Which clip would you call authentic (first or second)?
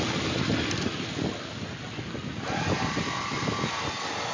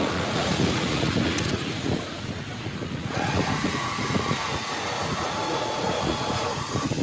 first